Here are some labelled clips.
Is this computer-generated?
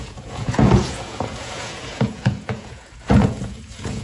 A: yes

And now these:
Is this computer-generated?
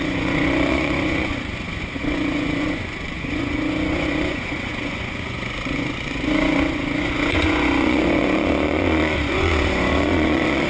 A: yes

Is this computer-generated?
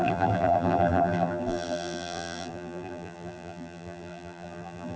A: yes